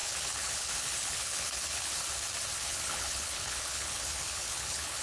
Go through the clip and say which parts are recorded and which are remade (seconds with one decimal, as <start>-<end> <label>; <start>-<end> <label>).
0.0-1.9 remade; 1.9-2.6 recorded; 2.6-5.0 remade